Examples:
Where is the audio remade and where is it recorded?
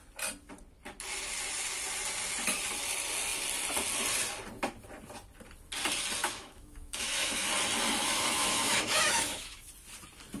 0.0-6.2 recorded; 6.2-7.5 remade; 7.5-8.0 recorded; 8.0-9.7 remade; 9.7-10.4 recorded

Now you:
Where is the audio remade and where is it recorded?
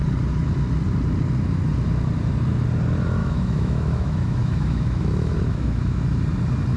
0.0-3.2 recorded; 3.2-6.0 remade; 6.0-6.8 recorded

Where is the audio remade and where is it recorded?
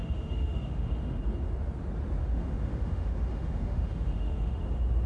0.0-1.2 remade; 1.2-2.2 recorded; 2.2-4.6 remade; 4.6-5.1 recorded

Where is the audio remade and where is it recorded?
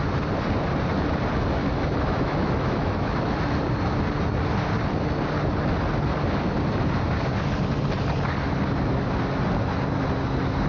0.0-1.6 recorded; 1.6-3.4 remade; 3.4-10.7 recorded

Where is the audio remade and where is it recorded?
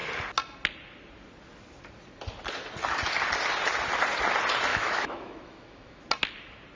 0.0-4.7 recorded; 4.7-6.0 remade; 6.0-6.8 recorded